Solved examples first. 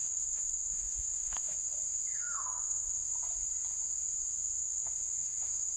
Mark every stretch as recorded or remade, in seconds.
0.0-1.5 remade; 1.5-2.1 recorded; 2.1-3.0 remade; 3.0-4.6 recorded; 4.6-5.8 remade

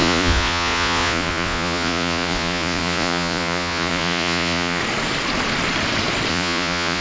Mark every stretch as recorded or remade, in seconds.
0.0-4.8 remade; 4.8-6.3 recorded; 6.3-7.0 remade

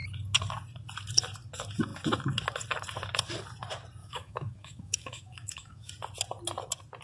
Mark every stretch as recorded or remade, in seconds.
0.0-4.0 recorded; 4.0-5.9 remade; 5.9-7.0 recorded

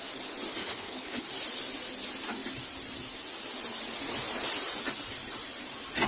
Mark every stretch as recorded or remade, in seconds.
0.0-0.6 recorded; 0.6-1.3 remade; 1.3-6.1 recorded

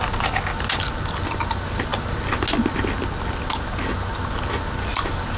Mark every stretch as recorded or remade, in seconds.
0.0-5.4 recorded